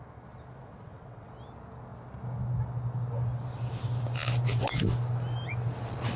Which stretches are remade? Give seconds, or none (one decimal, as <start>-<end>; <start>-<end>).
0.7-1.3